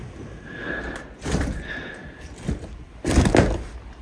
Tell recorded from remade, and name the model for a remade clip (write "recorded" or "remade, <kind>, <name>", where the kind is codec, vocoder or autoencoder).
recorded